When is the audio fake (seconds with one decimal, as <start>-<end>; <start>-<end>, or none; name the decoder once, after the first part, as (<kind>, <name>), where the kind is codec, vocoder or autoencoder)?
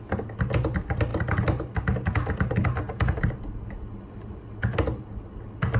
none